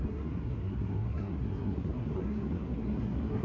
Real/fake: fake